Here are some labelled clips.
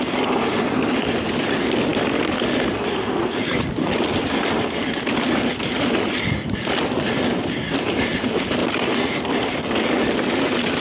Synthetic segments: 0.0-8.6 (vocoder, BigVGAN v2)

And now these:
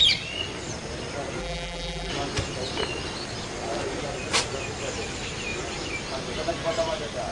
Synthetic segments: 1.4-2.1 (vocoder, BigVGAN v2)

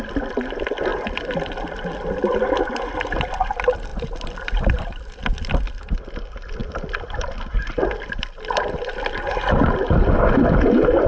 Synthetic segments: 0.9-2.6 (vocoder, BigVGAN v2); 3.9-5.2; 6.6-9.4

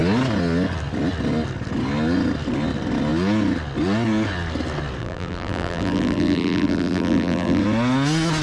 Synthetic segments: 5.0-7.6 (vocoder, BigVGAN v2)

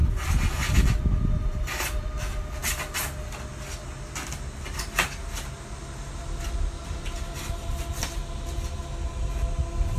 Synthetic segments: none

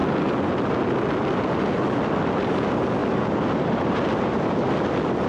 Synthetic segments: 3.0-3.9 (vocoder, BigVGAN v2)

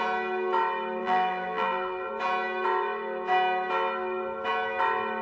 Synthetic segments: 1.0-2.1 (vocoder, BigVGAN v2)